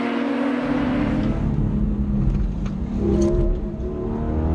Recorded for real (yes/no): yes